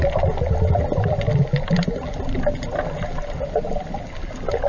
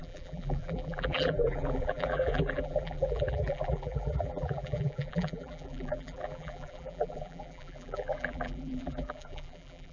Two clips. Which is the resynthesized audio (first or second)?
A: second